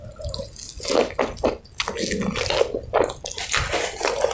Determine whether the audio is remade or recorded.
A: recorded